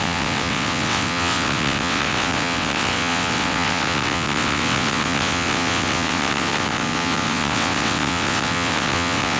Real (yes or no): no